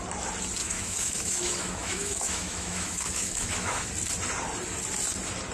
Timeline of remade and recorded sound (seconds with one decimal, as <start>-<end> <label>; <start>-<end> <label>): 0.0-0.6 recorded; 0.6-3.9 remade; 3.9-5.5 recorded